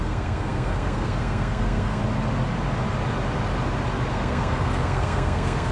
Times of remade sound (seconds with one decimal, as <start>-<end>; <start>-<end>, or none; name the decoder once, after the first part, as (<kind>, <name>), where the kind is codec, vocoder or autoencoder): 0.0-2.0 (codec, SNAC); 4.1-5.7